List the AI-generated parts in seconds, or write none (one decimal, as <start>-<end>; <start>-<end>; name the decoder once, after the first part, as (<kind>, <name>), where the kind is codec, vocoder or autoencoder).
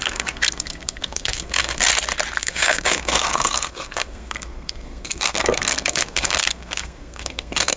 0.0-1.9 (codec, SNAC); 2.4-7.8